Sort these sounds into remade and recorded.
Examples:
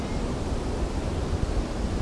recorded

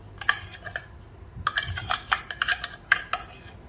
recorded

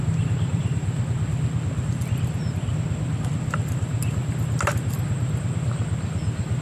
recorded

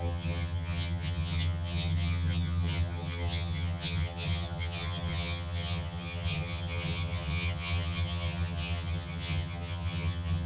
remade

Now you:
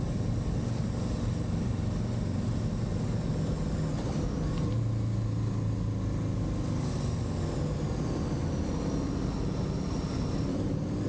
recorded